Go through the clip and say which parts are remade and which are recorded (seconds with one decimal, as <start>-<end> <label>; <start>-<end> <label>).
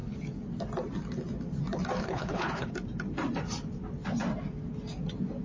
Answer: 0.0-2.0 recorded; 2.0-2.7 remade; 2.7-5.4 recorded